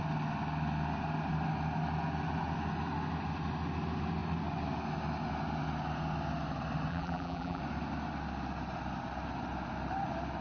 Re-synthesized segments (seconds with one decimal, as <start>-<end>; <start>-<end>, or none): 6.9-7.6